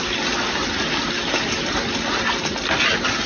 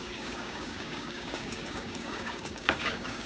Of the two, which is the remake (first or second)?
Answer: second